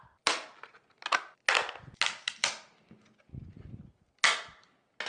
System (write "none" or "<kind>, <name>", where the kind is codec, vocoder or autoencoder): none